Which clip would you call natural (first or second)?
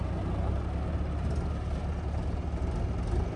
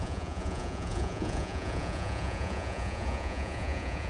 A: first